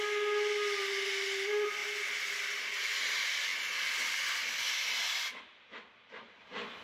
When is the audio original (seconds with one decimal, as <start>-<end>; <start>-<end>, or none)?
0.0-6.8